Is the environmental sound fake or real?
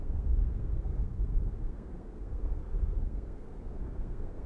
fake